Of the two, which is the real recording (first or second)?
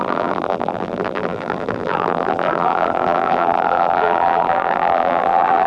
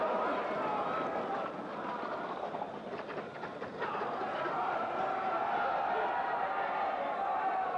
second